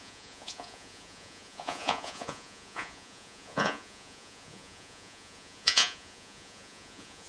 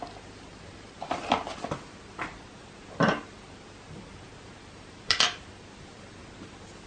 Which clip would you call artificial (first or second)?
first